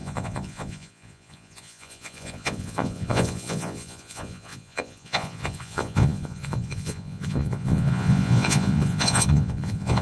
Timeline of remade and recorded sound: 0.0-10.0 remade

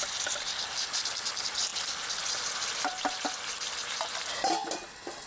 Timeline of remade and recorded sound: 0.0-5.3 recorded

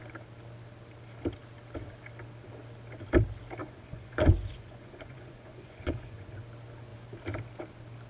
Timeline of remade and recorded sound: 0.0-3.6 recorded; 3.6-6.3 remade; 6.3-8.1 recorded

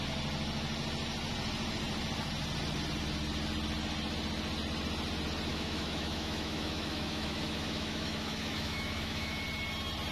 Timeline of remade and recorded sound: 0.0-5.5 recorded; 5.5-9.4 remade; 9.4-10.1 recorded

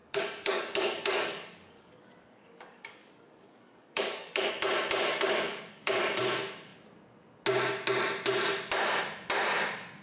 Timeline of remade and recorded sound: 0.0-4.5 remade; 4.5-5.1 recorded; 5.1-6.2 remade; 6.2-10.0 recorded

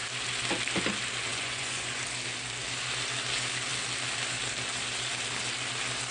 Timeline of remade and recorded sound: 0.0-1.3 recorded; 1.3-2.0 remade; 2.0-6.1 recorded